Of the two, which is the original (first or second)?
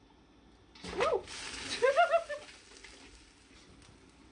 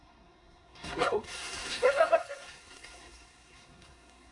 first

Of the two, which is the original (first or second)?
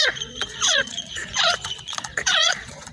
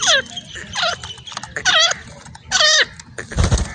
second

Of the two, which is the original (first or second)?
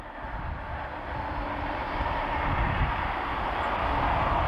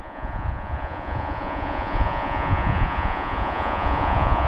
first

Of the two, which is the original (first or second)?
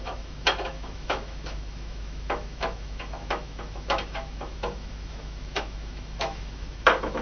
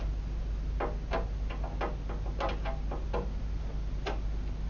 second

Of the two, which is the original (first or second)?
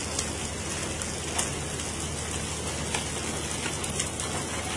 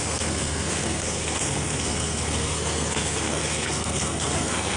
first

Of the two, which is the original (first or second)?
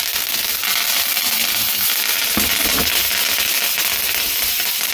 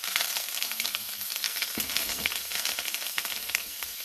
first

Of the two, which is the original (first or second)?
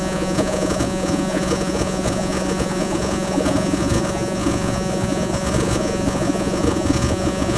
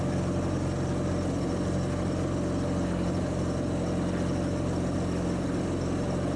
second